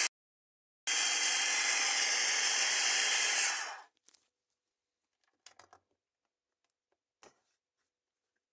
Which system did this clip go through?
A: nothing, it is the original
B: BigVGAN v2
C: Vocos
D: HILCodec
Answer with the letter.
A